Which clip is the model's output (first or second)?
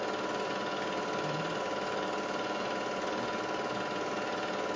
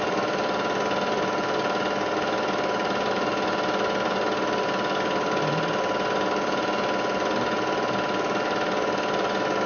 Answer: second